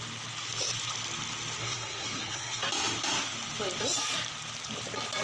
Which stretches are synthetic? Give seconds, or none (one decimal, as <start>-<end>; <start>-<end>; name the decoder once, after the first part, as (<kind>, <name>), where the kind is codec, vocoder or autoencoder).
1.6-2.6 (codec, SNAC)